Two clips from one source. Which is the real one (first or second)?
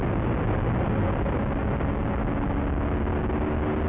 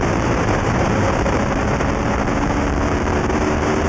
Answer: first